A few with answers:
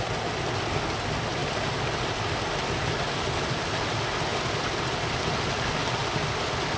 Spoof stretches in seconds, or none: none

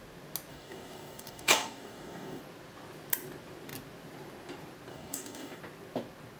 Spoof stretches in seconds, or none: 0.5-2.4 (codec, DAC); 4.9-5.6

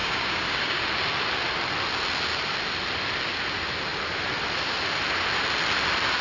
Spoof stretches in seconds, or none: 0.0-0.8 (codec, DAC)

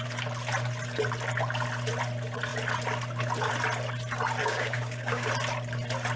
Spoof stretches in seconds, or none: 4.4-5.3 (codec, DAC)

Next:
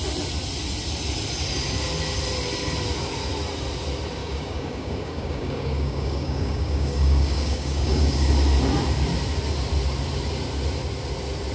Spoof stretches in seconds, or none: 4.2-8.3 (codec, DAC)